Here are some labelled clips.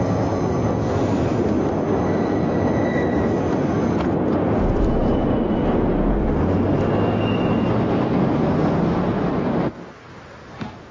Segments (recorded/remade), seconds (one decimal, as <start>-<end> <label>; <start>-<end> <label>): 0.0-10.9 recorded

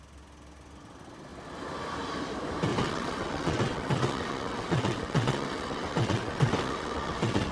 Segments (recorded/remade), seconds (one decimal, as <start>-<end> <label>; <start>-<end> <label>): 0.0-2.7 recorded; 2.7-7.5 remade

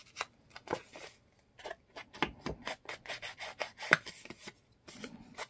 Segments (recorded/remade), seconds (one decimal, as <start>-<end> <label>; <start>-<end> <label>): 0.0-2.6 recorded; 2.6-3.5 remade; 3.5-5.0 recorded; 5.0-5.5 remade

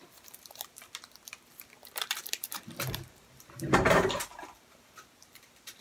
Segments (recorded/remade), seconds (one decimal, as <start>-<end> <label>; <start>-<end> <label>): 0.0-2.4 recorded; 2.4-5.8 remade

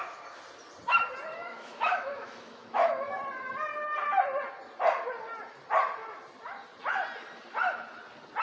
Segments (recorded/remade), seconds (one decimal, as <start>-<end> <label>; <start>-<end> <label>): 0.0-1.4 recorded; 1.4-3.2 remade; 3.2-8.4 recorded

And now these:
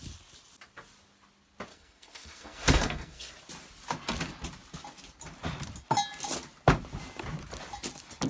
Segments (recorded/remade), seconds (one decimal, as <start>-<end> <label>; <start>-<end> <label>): 0.0-1.7 recorded; 1.7-3.3 remade; 3.3-8.3 recorded

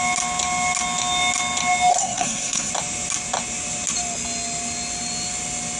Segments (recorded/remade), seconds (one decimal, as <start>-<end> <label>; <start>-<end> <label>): 0.0-1.9 recorded; 1.9-2.7 remade; 2.7-5.8 recorded